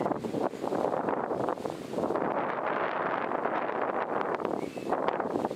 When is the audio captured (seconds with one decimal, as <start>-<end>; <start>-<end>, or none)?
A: 1.5-4.9